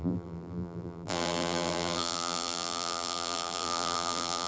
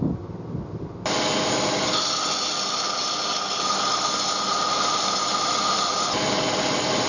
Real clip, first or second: second